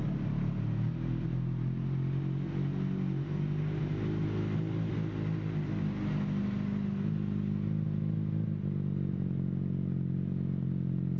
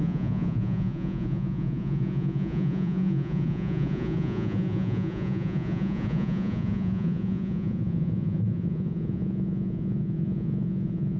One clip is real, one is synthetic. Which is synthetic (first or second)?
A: second